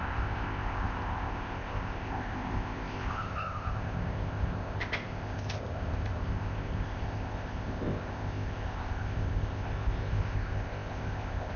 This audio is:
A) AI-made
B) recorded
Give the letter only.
A